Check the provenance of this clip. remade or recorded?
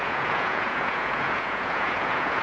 remade